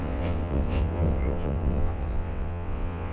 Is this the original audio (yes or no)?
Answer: no